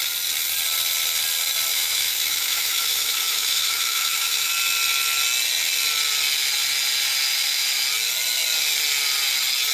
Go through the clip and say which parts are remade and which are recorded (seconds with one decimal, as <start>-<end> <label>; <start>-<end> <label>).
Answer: 0.0-1.7 recorded; 1.7-4.5 remade; 4.5-9.7 recorded